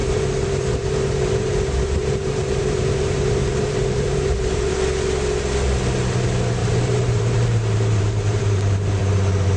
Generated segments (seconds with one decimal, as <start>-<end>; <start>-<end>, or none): 0.0-4.7; 6.6-9.0